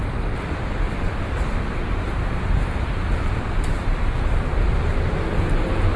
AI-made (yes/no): no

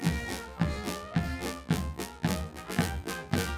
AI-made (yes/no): yes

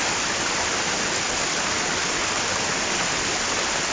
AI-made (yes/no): no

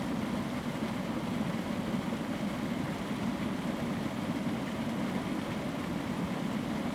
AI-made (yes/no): no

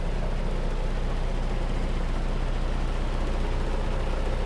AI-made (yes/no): no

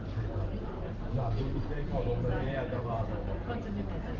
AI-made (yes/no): yes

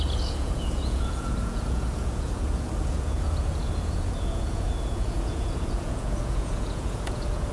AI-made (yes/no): yes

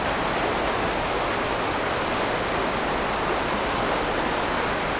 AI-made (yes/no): no